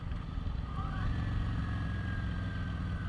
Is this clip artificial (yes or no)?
no